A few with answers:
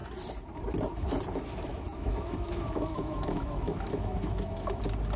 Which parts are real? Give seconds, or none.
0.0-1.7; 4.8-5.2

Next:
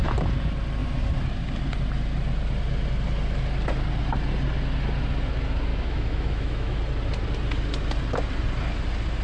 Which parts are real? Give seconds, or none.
0.0-5.7; 6.8-9.2

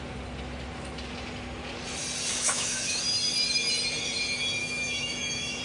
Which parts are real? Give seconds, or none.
0.0-2.3; 3.0-4.6

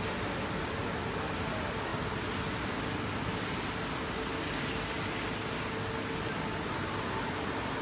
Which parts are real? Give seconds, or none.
0.0-7.8